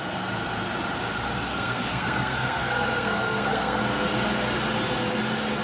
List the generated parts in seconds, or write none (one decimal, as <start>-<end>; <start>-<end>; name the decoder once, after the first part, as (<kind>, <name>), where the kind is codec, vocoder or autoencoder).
1.5-3.8 (codec, SNAC)